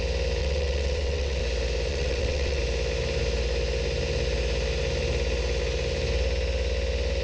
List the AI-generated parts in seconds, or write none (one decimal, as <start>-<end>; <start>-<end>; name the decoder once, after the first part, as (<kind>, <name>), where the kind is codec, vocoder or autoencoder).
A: 0.4-1.4 (vocoder, WaveNeXt); 1.9-2.6